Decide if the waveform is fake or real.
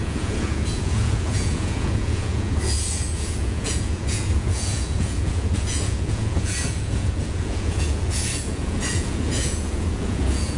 fake